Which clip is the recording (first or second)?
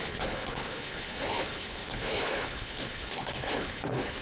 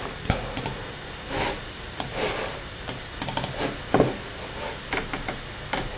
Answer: second